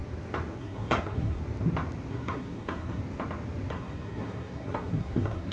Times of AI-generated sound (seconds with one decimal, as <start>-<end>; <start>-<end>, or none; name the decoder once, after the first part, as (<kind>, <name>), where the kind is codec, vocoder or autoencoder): 0.6-1.4 (codec, SNAC); 2.1-3.0; 3.7-5.5